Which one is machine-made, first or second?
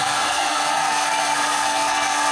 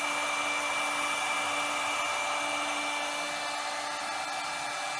first